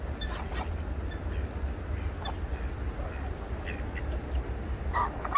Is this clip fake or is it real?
real